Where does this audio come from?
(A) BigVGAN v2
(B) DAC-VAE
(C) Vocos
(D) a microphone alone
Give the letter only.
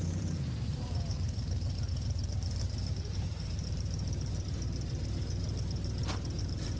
A